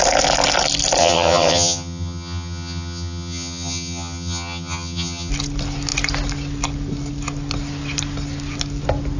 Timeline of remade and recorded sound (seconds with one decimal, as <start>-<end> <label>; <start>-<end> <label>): 0.0-1.0 recorded; 1.0-5.3 remade; 5.3-9.2 recorded